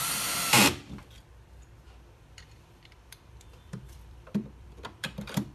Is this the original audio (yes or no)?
no